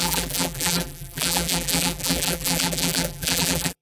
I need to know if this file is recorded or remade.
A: remade